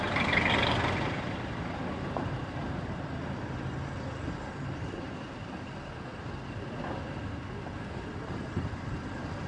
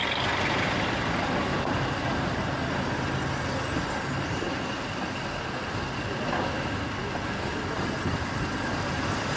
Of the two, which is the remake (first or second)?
first